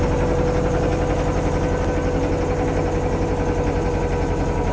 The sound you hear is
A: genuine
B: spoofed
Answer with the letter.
A